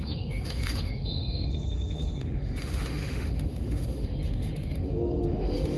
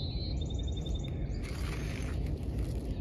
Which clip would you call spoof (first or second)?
first